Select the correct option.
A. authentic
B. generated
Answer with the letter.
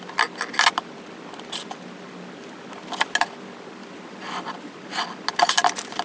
A